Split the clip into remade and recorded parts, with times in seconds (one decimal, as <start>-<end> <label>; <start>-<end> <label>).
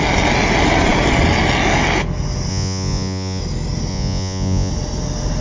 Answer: 0.0-2.5 recorded; 2.5-3.4 remade; 3.4-3.9 recorded; 3.9-4.7 remade; 4.7-5.4 recorded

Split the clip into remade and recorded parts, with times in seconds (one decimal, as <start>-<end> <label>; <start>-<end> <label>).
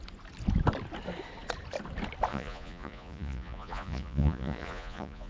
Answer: 0.0-2.3 recorded; 2.3-5.3 remade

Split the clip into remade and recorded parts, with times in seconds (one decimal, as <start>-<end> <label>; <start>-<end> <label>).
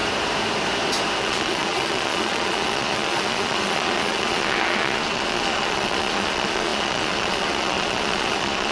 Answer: 0.0-1.2 recorded; 1.2-8.7 remade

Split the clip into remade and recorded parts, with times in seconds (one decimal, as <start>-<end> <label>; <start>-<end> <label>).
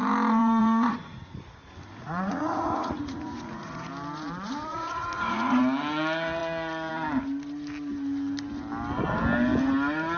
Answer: 0.0-0.4 recorded; 0.4-3.9 remade; 3.9-4.7 recorded; 4.7-5.6 remade; 5.6-10.2 recorded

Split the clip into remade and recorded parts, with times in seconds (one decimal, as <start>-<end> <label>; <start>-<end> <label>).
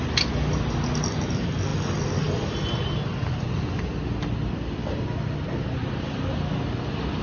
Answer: 0.0-7.2 recorded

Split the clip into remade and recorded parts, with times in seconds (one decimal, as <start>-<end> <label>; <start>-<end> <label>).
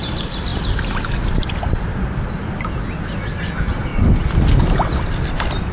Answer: 0.0-5.7 recorded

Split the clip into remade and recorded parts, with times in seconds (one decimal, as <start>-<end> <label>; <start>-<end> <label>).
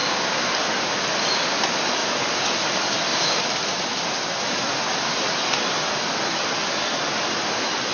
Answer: 0.0-7.9 recorded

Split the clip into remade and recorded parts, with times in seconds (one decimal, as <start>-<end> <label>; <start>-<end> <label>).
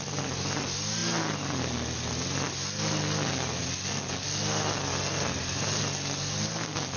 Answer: 0.0-7.0 recorded